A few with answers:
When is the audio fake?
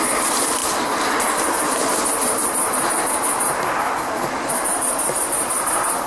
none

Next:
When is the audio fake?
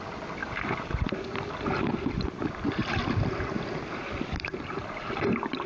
0.4-1.0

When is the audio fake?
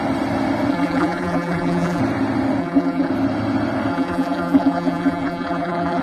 0.7-2.0; 2.6-3.1; 3.9-6.0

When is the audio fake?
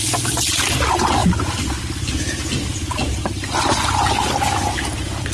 none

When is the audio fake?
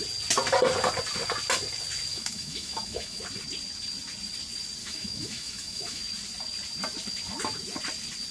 2.1-3.2; 4.8-6.0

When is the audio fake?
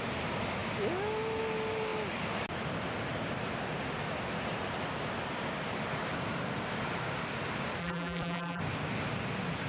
7.8-8.6